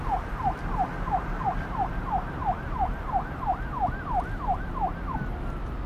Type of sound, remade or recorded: recorded